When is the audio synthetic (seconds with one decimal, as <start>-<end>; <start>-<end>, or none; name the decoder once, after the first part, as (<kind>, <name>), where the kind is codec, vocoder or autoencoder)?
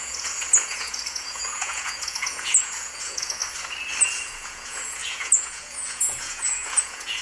0.0-3.4 (vocoder, Vocos); 4.0-7.2